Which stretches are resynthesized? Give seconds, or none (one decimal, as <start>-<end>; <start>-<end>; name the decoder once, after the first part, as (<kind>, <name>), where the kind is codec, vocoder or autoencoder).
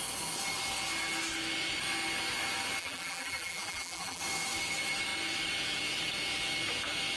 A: 2.8-4.2 (vocoder, BigVGAN v2)